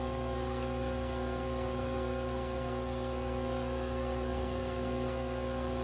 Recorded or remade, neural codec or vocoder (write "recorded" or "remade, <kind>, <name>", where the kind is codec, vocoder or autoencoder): remade, codec, SNAC